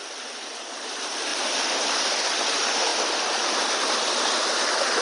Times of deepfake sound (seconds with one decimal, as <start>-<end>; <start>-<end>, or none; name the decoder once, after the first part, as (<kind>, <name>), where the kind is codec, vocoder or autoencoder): 1.3-1.9 (vocoder, BigVGAN v2)